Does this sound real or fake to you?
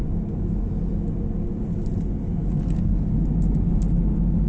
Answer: real